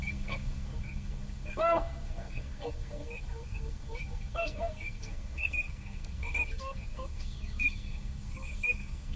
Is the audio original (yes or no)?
no